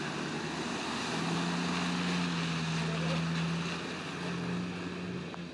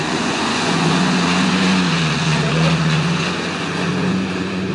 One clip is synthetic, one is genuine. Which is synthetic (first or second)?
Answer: second